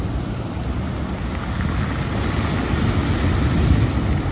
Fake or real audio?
real